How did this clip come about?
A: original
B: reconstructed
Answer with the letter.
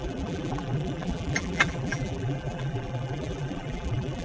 B